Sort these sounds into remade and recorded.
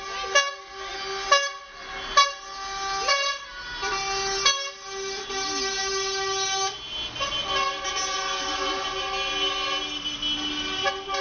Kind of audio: recorded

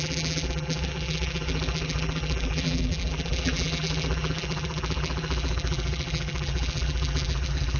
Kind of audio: remade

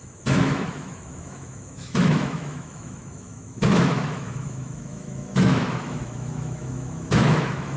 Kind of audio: remade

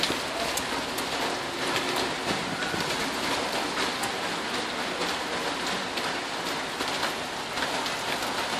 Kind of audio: recorded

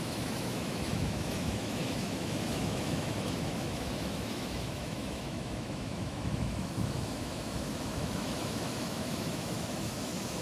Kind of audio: remade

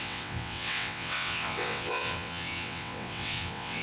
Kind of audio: remade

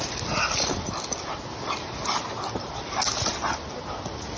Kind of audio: recorded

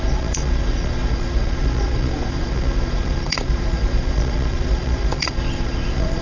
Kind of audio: remade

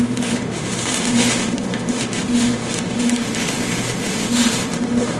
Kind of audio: remade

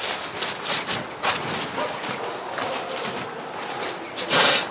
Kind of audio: recorded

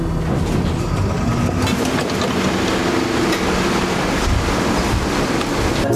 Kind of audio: recorded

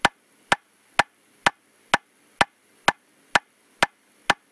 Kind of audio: recorded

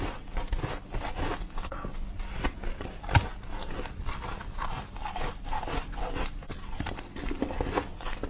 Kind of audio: recorded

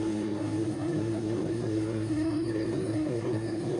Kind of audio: remade